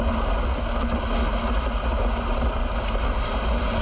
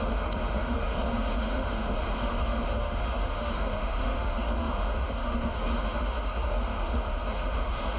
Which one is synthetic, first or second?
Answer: second